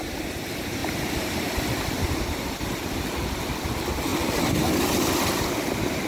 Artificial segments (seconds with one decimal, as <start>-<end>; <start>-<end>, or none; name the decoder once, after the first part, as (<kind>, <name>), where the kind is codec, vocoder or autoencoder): none